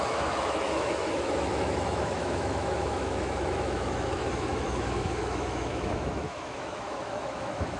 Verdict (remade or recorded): remade